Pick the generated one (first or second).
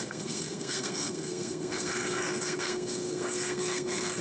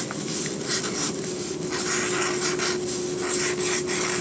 first